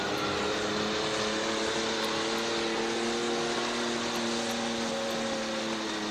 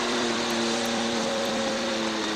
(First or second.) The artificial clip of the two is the second